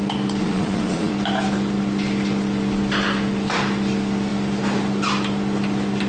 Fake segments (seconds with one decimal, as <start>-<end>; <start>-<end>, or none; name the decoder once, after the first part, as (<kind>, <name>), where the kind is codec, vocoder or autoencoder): 0.4-1.1 (vocoder, Vocos)